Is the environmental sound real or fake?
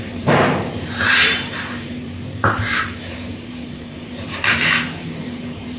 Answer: fake